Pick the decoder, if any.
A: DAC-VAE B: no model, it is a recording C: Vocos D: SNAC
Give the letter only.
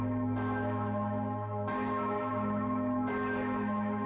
A